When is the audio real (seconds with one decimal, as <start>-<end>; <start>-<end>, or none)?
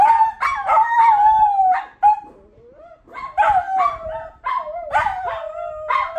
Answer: 0.0-6.2